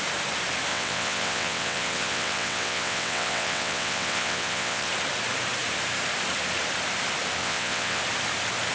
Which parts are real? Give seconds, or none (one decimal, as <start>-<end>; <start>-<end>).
0.0-0.7; 4.9-7.4; 8.0-8.7